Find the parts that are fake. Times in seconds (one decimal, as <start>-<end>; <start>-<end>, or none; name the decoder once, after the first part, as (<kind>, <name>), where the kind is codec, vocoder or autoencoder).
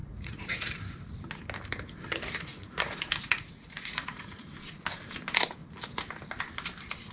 0.0-0.7 (vocoder, Vocos); 2.5-4.5